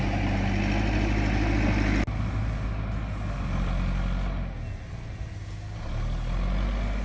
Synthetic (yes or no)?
no